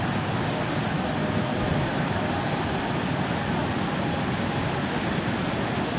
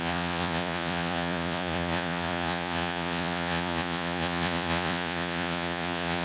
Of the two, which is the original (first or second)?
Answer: first